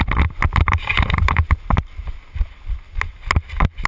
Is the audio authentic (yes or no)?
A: yes